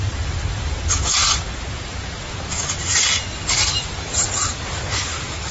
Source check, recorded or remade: remade